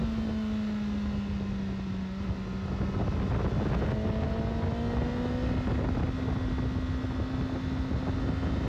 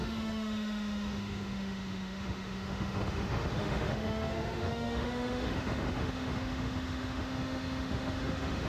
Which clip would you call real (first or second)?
first